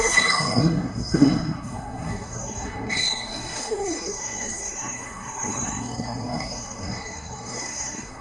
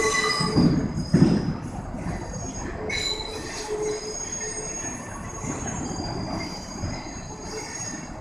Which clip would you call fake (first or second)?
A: first